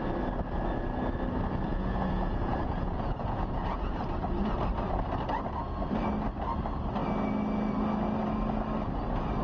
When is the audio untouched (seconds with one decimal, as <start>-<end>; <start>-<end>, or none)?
0.0-1.7; 4.0-9.4